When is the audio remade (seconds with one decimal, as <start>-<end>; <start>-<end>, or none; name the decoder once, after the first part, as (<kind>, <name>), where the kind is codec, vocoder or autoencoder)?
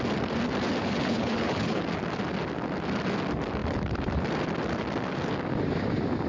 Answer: 0.8-1.8 (codec, HILCodec)